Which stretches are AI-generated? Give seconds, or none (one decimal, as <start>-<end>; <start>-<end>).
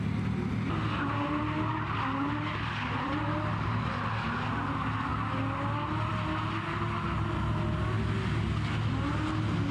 none